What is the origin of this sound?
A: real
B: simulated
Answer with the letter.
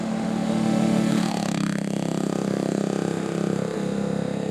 B